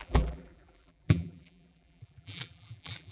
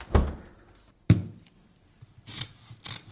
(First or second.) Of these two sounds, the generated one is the first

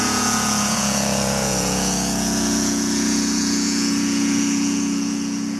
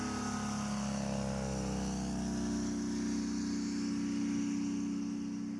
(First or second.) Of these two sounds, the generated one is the first